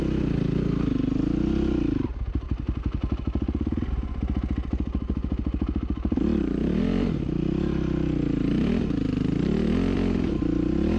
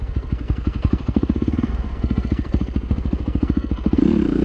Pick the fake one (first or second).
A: second